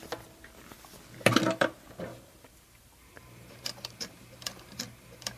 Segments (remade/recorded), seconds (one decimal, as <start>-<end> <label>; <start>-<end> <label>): 0.0-2.1 recorded; 2.1-5.4 remade

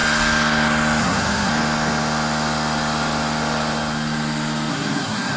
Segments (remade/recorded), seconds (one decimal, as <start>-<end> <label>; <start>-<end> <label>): 0.0-1.0 recorded; 1.0-1.5 remade; 1.5-4.7 recorded; 4.7-5.4 remade